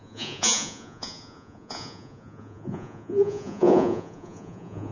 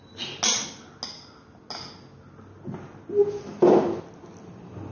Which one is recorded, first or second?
second